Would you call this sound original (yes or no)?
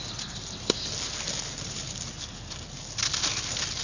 yes